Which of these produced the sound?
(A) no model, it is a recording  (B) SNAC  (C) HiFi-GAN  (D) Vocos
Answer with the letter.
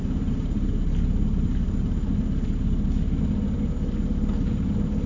A